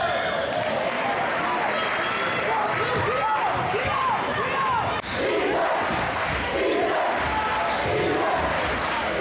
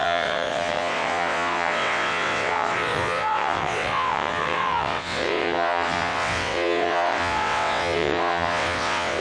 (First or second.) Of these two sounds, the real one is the first